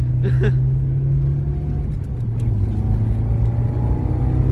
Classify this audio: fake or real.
real